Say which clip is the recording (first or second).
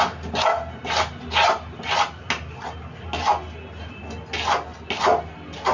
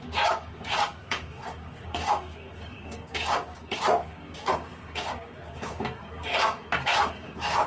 first